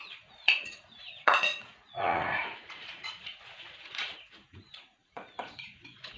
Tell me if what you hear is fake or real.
fake